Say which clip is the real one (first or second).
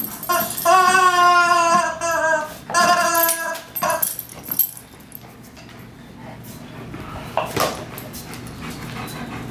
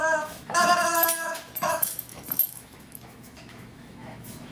first